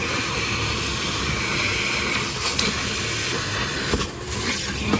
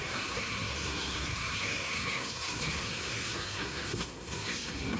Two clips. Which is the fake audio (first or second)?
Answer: second